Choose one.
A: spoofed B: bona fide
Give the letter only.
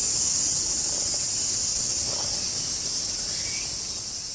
B